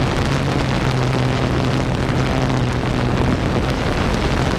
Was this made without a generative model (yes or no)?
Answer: yes